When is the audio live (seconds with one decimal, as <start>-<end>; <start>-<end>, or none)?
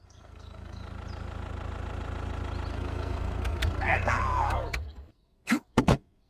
0.8-2.7